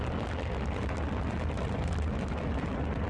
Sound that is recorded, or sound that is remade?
recorded